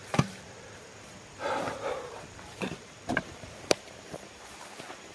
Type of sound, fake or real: fake